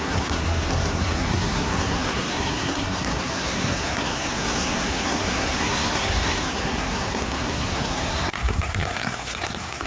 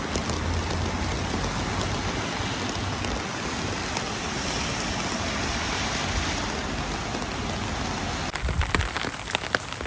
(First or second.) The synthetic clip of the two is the first